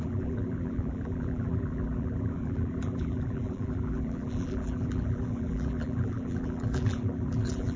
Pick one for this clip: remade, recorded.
remade